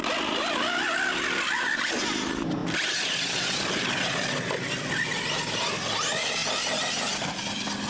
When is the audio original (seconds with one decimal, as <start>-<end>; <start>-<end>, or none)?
0.0-7.9